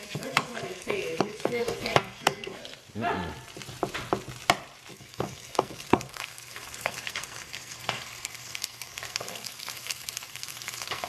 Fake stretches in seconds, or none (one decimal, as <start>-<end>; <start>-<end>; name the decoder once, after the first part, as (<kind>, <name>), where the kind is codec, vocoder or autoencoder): 0.0-2.6 (codec, SNAC); 4.9-11.1